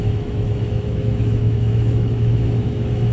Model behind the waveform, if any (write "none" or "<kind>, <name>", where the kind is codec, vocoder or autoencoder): autoencoder, DAC-VAE